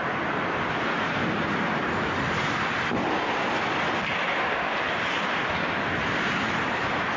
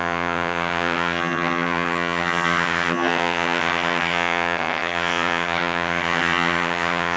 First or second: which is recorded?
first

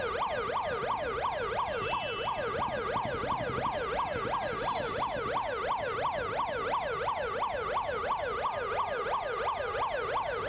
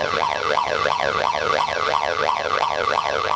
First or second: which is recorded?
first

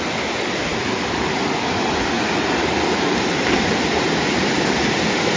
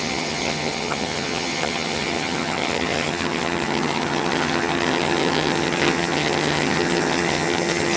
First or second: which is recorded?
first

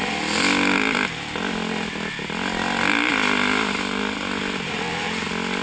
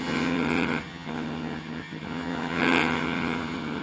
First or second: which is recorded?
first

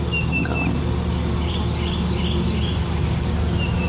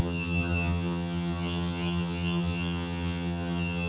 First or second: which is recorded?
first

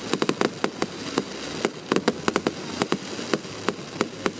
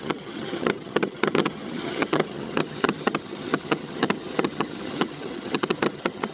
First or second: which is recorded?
first